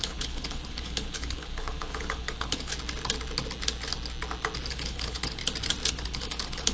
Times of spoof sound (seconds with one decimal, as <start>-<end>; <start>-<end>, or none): 0.0-2.7; 4.7-5.4; 5.9-6.7